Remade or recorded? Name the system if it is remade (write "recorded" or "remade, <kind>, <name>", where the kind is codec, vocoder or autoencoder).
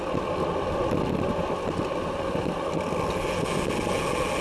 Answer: recorded